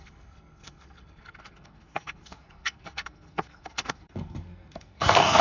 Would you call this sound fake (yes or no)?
yes